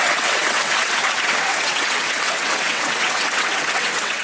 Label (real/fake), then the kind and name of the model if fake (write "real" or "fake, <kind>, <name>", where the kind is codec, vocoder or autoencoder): fake, vocoder, WaveNeXt